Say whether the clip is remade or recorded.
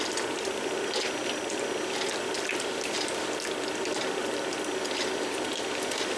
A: recorded